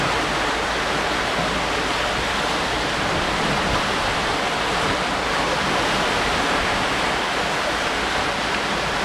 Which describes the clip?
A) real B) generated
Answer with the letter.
A